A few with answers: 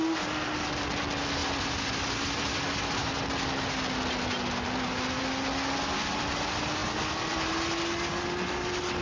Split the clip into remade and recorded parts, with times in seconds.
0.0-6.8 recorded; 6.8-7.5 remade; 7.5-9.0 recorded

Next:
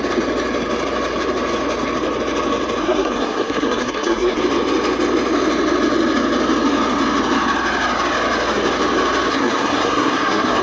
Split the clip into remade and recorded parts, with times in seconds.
0.0-2.8 recorded; 2.8-4.4 remade; 4.4-9.3 recorded; 9.3-10.6 remade

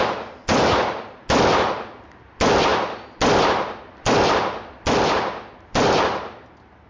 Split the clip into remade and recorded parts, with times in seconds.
0.0-6.9 recorded